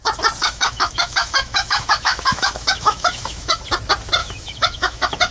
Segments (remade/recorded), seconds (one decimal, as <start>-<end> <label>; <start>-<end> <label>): 0.0-0.4 recorded; 0.4-3.6 remade; 3.6-4.2 recorded; 4.2-5.3 remade